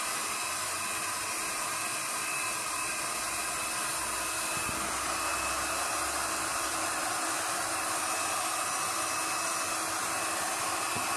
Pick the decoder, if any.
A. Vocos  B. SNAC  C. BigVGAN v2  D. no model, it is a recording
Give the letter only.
D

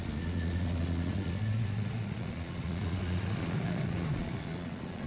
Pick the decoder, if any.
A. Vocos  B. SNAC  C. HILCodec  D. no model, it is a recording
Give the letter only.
A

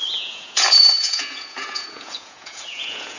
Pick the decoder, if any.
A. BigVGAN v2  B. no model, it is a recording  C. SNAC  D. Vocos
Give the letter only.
D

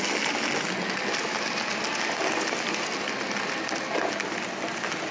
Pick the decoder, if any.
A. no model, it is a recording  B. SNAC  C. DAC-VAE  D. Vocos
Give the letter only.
A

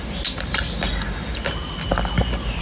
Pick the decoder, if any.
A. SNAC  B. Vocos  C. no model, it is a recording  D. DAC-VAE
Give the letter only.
C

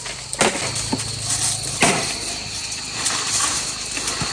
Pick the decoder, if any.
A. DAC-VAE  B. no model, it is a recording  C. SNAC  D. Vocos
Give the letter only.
B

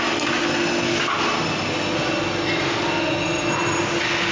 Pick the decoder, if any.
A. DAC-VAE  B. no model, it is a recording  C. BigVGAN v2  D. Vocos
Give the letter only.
B